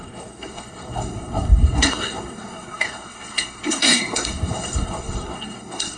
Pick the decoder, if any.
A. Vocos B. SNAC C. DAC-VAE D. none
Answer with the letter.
B